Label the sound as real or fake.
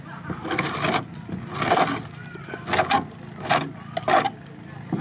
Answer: real